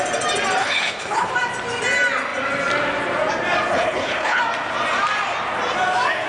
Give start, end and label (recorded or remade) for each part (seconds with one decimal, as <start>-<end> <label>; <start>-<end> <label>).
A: 0.0-0.6 recorded; 0.6-1.3 remade; 1.3-3.7 recorded; 3.7-4.4 remade; 4.4-6.3 recorded